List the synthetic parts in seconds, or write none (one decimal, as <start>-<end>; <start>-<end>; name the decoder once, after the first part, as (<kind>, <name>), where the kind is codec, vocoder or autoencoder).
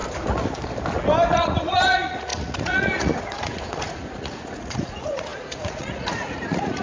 1.3-6.8 (vocoder, Vocos)